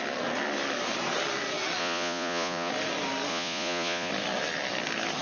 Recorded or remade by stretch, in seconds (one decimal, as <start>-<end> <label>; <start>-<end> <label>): 0.0-1.8 recorded; 1.8-2.7 remade; 2.7-3.3 recorded; 3.3-4.1 remade; 4.1-5.2 recorded